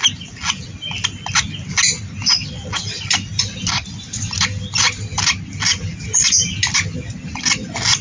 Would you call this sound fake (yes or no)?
no